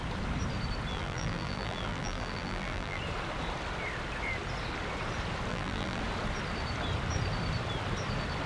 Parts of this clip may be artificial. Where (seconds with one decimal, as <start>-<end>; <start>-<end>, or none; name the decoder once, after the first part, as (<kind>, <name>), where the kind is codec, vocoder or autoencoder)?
0.9-3.0 (vocoder, BigVGAN v2); 5.5-6.0